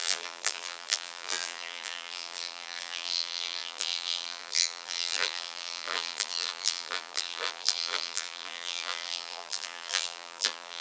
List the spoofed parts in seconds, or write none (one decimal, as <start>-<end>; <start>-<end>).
0.0-10.8